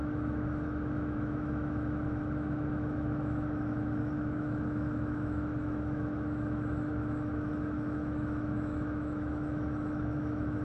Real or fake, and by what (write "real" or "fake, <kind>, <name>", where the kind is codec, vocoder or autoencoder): fake, autoencoder, DAC-VAE